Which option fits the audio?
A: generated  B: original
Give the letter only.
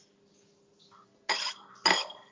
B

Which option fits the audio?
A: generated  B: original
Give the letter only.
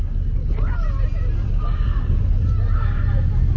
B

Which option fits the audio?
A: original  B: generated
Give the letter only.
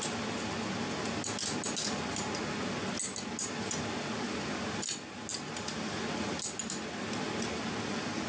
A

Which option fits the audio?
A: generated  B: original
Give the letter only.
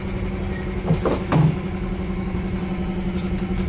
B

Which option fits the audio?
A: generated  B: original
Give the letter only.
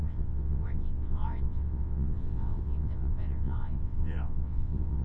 A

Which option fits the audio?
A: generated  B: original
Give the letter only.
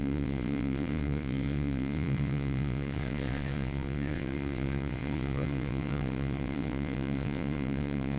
A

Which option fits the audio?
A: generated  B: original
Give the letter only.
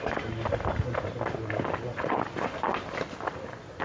B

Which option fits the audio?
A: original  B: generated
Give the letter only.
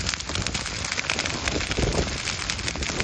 A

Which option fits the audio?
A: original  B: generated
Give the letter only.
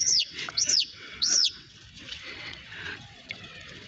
B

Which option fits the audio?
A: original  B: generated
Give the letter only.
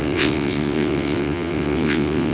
B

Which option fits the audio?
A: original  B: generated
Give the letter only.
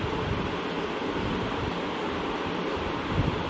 A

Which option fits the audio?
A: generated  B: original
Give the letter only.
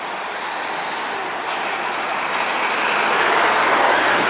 B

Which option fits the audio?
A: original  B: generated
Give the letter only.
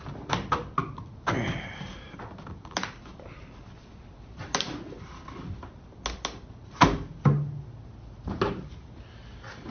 A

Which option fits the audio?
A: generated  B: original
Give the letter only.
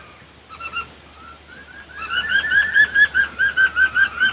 B